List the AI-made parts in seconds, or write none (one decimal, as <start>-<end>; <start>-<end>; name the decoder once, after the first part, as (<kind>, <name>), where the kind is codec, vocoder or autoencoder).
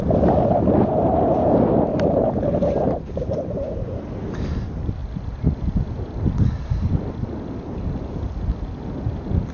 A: none